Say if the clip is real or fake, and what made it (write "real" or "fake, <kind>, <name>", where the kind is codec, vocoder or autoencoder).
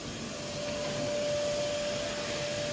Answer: real